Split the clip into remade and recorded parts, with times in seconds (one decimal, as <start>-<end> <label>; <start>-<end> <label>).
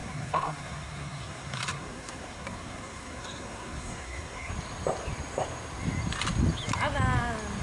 0.0-4.5 remade; 4.5-7.6 recorded